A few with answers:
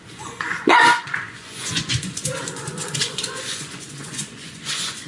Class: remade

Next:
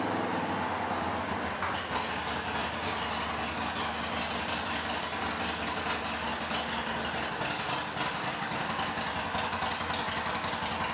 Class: recorded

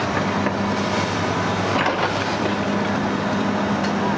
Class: recorded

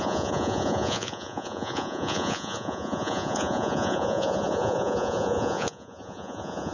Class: remade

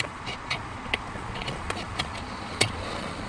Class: remade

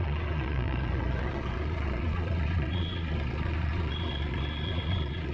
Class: remade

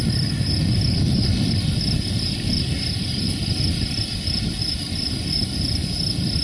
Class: recorded